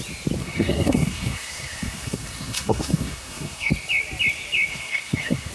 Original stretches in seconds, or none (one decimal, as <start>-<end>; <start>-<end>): 0.0-0.4; 3.7-4.7